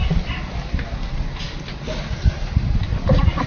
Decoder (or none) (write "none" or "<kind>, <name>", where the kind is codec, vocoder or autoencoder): none